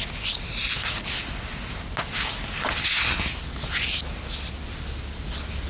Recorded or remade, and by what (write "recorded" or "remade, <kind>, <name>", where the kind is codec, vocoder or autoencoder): recorded